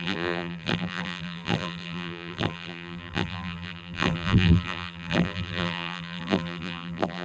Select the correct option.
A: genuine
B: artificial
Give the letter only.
B